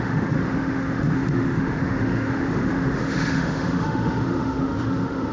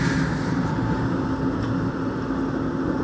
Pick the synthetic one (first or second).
first